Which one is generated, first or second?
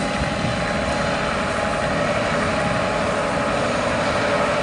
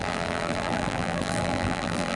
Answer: second